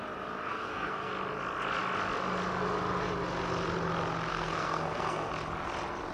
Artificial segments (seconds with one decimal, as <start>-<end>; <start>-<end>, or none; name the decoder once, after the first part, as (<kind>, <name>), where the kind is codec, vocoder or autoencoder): 0.5-1.1 (codec, SNAC); 4.3-5.3